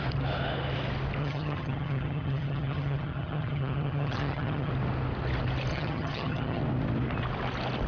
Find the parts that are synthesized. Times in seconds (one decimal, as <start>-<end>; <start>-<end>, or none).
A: 1.2-4.7; 5.7-6.6